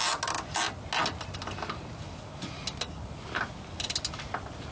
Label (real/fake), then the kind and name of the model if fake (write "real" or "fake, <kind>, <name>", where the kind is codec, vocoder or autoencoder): real